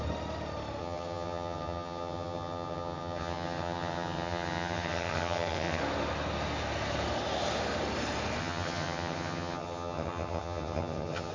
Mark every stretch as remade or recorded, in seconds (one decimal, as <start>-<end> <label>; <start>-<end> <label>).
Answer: 0.0-0.8 recorded; 0.8-5.8 remade; 5.8-8.4 recorded; 8.4-11.3 remade